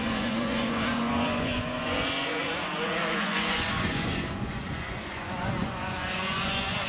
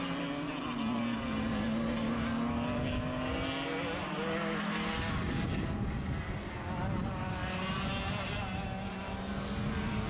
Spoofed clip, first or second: first